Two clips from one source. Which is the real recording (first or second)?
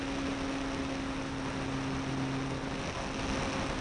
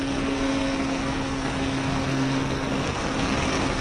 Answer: first